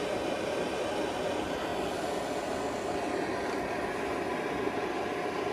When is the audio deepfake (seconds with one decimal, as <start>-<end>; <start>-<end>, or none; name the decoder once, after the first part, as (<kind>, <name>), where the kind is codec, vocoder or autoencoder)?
none